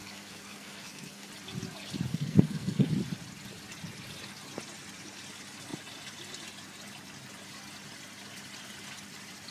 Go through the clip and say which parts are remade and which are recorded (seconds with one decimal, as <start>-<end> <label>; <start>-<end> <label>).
0.0-1.3 remade; 1.3-2.1 recorded; 2.1-2.9 remade; 2.9-9.5 recorded